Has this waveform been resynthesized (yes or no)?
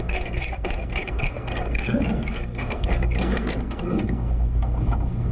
yes